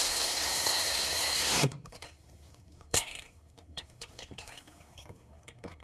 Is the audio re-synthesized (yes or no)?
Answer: yes